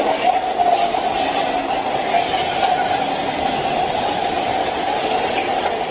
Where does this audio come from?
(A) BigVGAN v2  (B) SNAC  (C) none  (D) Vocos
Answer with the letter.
C